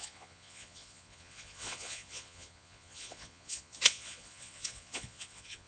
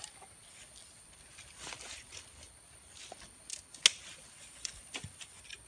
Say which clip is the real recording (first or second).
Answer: second